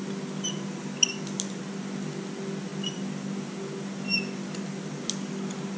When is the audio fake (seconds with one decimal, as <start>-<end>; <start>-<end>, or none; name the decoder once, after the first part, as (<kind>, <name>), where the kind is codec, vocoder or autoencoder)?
none